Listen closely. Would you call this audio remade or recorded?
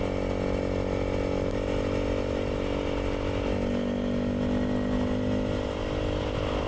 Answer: recorded